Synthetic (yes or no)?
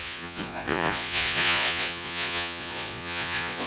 yes